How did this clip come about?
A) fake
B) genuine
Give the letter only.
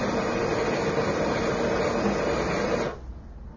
B